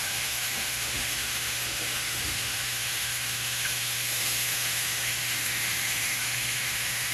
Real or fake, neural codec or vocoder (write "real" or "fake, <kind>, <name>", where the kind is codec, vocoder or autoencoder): fake, autoencoder, DAC-VAE